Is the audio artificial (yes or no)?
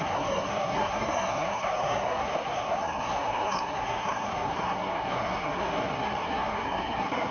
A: yes